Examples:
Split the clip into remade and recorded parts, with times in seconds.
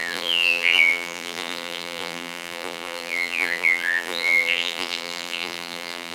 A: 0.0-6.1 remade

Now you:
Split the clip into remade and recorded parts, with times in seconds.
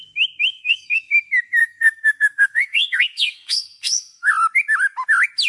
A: 0.0-0.5 recorded; 0.5-1.0 remade; 1.0-1.6 recorded; 1.6-4.3 remade; 4.3-5.5 recorded